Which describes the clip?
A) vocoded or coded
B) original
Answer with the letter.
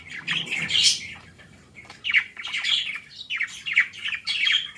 B